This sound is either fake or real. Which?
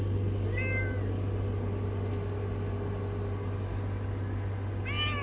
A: real